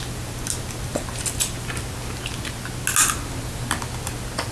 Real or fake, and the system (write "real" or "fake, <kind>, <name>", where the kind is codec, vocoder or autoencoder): real